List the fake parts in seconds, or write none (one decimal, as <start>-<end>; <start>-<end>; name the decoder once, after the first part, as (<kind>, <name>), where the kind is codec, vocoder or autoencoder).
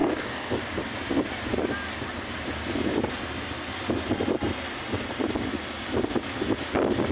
0.0-0.6 (codec, DAC)